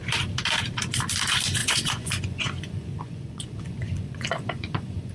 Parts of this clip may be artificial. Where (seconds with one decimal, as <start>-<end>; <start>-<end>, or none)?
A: 1.6-5.1